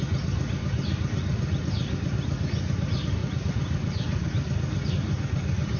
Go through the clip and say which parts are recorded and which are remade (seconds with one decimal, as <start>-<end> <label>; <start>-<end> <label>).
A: 0.0-5.8 recorded